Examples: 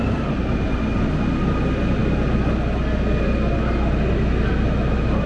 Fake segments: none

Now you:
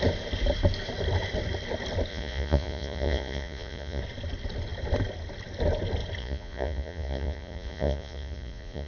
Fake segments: 2.1-4.0; 6.2-8.9

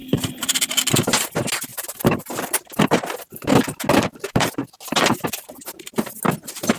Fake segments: 0.0-0.5; 1.7-3.5

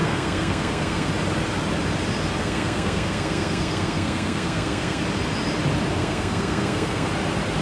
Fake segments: 0.0-1.1; 2.4-5.0; 6.0-7.1

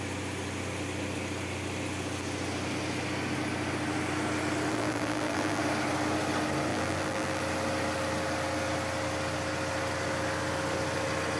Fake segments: 4.7-5.6; 6.7-7.4

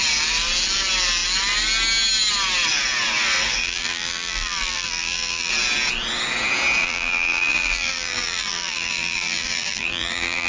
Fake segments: 3.6-5.5; 6.8-10.5